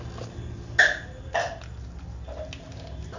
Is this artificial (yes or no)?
no